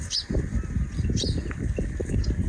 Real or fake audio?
real